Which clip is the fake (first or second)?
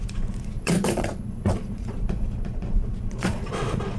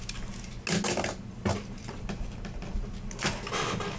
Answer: first